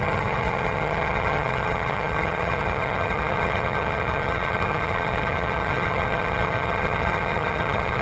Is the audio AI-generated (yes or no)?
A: yes